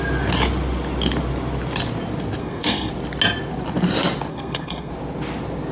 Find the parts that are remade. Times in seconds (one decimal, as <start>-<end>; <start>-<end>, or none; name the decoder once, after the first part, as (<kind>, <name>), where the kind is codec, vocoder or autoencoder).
2.4-2.9 (codec, SNAC); 4.3-4.9